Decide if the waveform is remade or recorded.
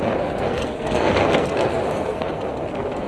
remade